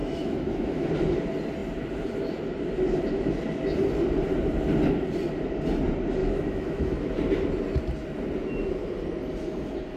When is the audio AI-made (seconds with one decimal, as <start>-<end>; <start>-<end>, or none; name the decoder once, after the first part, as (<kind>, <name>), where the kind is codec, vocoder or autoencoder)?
0.0-0.9 (autoencoder, DAC-VAE); 6.2-7.1